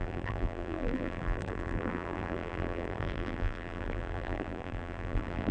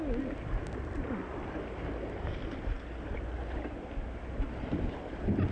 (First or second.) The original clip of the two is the second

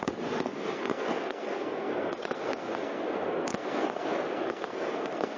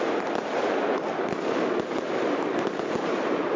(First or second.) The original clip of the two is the second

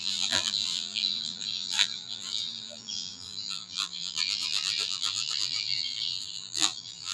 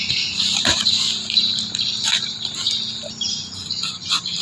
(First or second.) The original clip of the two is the second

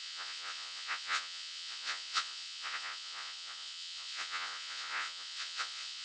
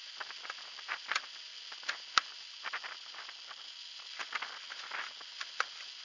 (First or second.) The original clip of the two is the second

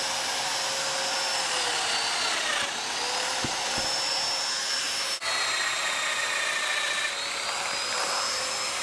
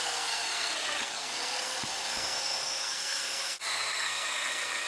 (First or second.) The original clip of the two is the first